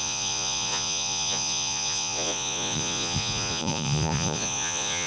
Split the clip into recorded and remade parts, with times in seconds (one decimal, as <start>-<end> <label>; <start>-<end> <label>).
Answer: 0.0-5.1 remade